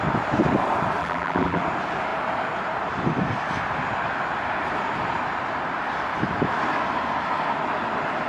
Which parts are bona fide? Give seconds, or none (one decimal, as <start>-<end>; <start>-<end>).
0.0-1.0; 1.6-8.3